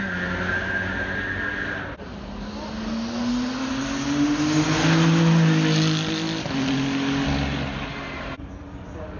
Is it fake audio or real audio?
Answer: real